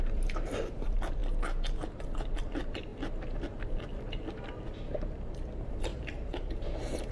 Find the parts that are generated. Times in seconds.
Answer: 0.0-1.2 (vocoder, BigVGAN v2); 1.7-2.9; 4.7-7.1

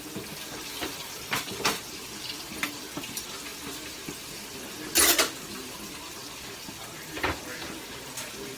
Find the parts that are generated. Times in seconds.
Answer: none

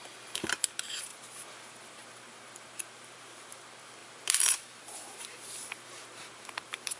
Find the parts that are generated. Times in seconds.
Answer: 0.0-1.1 (vocoder, BigVGAN v2); 1.7-7.0

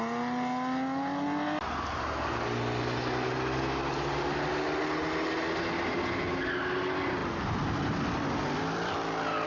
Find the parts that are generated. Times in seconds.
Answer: none

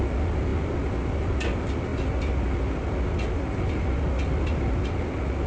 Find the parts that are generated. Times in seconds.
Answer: none

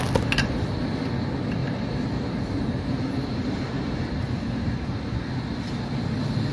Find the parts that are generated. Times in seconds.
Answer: 1.6-5.2 (vocoder, BigVGAN v2)

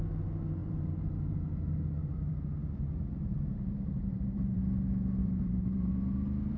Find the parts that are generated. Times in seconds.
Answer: 0.6-4.6 (vocoder, BigVGAN v2); 5.2-5.9

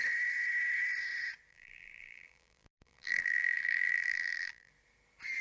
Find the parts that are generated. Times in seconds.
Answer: 1.5-4.7 (vocoder, BigVGAN v2)